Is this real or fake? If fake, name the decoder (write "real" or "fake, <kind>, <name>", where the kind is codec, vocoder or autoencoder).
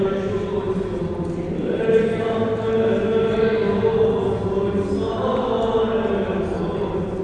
real